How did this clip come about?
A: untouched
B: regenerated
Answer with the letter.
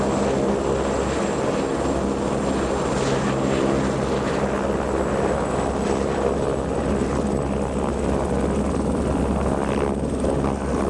A